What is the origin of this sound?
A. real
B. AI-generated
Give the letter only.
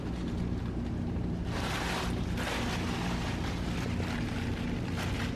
B